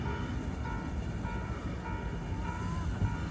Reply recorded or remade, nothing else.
recorded